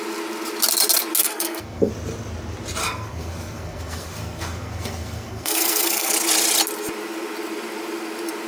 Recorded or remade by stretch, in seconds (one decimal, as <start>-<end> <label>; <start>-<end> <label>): 0.0-1.2 recorded; 1.2-1.9 remade; 1.9-2.8 recorded; 2.8-6.1 remade; 6.1-8.5 recorded